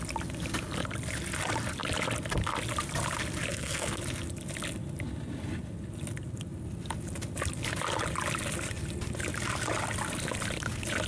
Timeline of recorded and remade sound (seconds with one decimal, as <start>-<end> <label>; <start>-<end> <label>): 0.0-3.5 recorded; 3.5-4.0 remade; 4.0-11.1 recorded

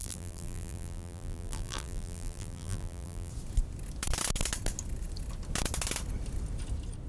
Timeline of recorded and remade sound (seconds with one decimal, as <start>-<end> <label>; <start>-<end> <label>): 0.0-3.3 remade; 3.3-7.1 recorded

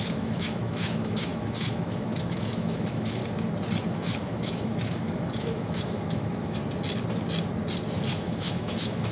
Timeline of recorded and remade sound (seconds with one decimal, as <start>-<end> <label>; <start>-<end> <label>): 0.0-3.2 remade; 3.2-3.9 recorded; 3.9-6.6 remade; 6.6-8.1 recorded; 8.1-9.1 remade

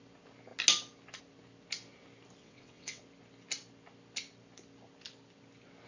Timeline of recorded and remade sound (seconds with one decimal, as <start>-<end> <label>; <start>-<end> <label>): 0.0-2.4 recorded; 2.4-3.0 remade; 3.0-5.9 recorded